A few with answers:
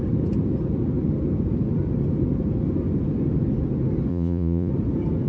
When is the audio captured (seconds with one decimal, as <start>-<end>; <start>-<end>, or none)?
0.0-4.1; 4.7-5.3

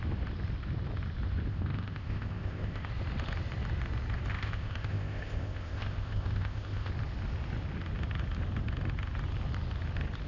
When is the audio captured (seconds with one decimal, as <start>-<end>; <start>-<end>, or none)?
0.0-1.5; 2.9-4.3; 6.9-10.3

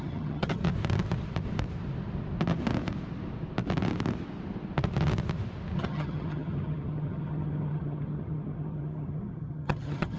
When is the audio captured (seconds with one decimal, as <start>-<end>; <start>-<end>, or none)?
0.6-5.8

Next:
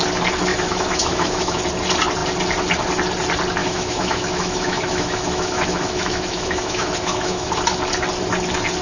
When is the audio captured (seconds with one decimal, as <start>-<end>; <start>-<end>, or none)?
0.0-0.5; 1.6-3.6; 7.5-8.8

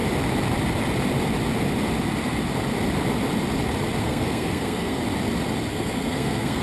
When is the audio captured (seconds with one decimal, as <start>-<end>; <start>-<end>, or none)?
0.0-4.0; 5.0-5.7

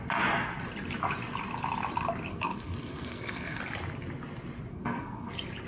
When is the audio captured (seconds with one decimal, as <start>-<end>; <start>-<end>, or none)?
0.0-2.3; 3.6-4.7; 5.3-5.7

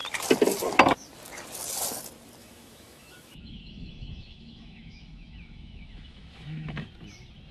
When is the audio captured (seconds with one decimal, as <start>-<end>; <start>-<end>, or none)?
0.0-2.4; 6.9-7.5